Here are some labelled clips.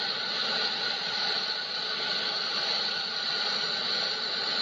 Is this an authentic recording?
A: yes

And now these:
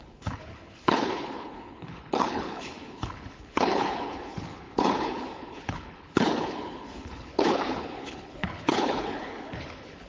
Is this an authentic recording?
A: no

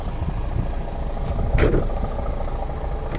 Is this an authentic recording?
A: yes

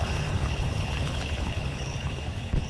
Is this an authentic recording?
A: no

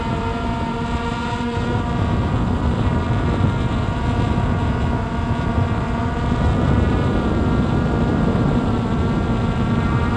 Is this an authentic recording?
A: yes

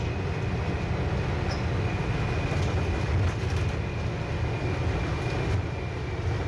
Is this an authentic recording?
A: yes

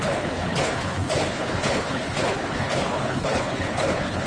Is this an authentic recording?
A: no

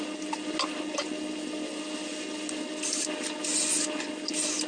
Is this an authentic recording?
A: yes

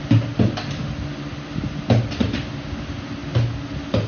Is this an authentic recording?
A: yes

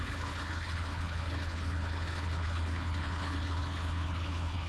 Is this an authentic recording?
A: no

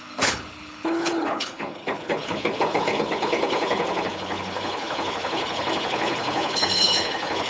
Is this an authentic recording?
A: no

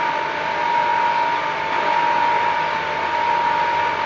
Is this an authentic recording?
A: yes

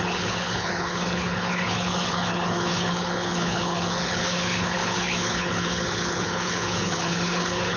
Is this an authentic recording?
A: no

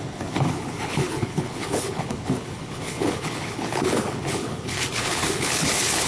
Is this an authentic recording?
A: no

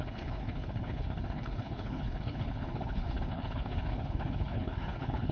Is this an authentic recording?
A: no